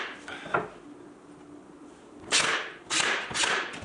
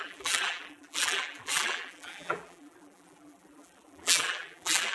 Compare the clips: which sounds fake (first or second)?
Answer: second